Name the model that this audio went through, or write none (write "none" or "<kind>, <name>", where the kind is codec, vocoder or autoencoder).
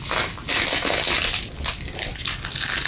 none